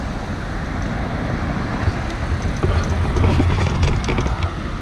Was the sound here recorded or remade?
recorded